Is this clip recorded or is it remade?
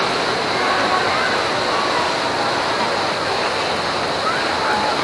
recorded